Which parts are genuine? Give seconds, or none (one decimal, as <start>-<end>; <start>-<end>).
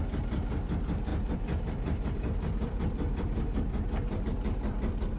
0.0-1.1; 4.2-5.2